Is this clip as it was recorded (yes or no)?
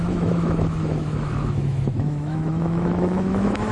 no